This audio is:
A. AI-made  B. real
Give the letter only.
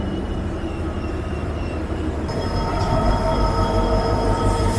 A